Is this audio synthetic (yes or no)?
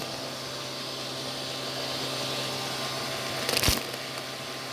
no